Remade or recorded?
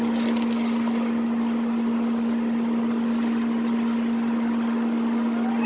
recorded